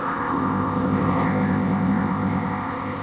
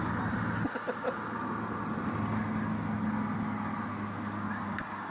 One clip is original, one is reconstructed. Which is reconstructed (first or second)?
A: first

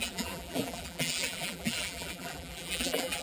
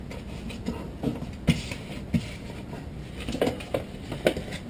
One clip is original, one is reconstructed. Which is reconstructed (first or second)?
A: first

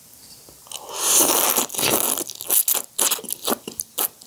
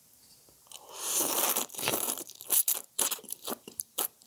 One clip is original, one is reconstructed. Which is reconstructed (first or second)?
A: second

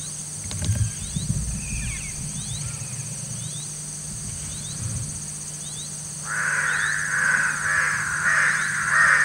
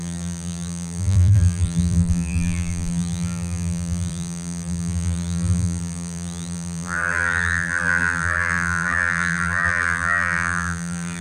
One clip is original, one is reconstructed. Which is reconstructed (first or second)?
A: second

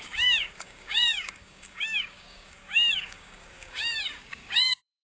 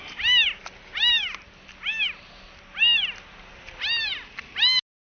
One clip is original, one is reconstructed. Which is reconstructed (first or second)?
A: first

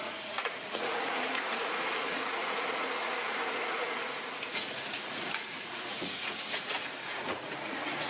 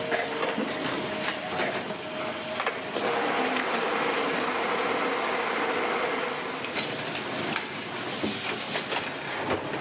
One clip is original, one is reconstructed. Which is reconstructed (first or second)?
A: first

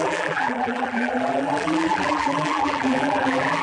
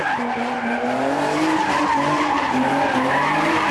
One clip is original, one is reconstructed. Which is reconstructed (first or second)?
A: first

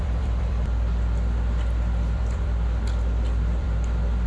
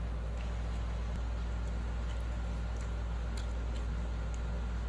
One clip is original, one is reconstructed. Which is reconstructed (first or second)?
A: first